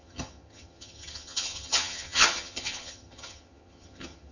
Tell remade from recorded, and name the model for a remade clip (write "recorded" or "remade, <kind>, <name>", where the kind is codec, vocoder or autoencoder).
remade, vocoder, HiFi-GAN